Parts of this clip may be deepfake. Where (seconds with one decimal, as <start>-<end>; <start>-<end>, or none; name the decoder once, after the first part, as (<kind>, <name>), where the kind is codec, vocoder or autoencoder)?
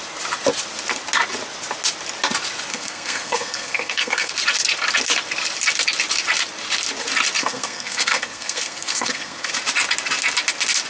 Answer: 2.7-4.3 (codec, SNAC); 7.4-9.5